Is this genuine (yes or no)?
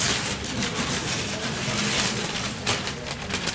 yes